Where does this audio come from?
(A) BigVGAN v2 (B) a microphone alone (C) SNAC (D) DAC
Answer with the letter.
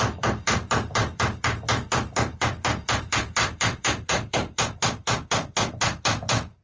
A